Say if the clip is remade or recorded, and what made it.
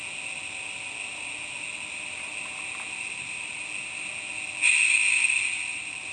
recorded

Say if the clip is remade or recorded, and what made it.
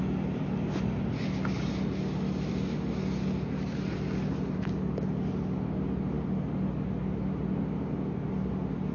recorded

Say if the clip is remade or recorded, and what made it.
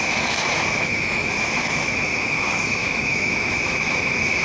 remade, autoencoder, DAC-VAE